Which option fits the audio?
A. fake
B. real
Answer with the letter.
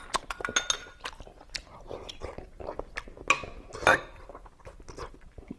B